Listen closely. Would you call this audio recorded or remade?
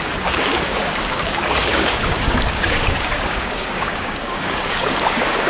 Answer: remade